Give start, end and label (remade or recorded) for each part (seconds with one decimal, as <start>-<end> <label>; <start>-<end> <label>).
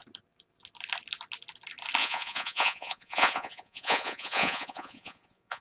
0.0-2.0 recorded; 2.0-5.6 remade